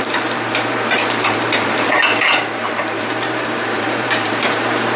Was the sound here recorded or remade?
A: remade